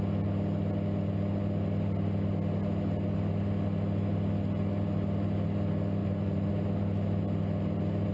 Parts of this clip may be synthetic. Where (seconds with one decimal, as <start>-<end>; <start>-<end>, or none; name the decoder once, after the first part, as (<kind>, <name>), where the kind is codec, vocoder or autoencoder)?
6.0-6.5 (vocoder, BigVGAN v2)